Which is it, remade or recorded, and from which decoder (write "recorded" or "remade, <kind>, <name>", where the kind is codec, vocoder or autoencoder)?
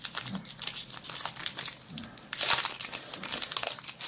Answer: recorded